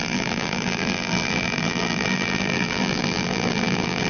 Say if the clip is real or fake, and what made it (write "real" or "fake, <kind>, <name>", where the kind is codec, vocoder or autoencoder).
fake, vocoder, BigVGAN v2